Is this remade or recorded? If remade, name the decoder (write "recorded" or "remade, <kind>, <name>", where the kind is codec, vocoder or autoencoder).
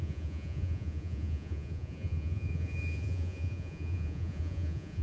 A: remade, vocoder, Vocos